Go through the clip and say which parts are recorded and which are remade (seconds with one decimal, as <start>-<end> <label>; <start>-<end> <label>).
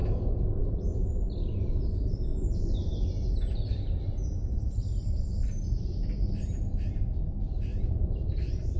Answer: 0.0-2.3 recorded; 2.3-2.8 remade; 2.8-4.4 recorded; 4.4-6.9 remade; 6.9-7.7 recorded; 7.7-8.8 remade